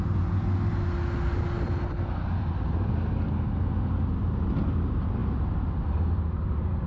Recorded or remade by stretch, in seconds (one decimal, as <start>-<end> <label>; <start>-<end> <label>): 0.0-6.9 recorded